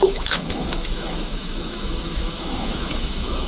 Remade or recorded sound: remade